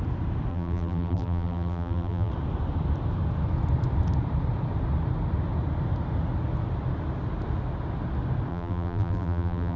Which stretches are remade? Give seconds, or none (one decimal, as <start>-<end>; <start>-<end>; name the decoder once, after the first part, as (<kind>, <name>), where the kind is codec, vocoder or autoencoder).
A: 0.5-2.3 (vocoder, BigVGAN v2); 8.5-9.8